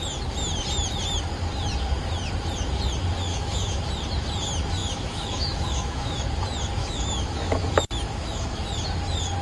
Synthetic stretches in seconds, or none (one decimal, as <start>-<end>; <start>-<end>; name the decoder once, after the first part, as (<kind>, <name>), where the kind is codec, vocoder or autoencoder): 3.3-3.8 (autoencoder, DAC-VAE); 4.8-6.2; 6.8-8.6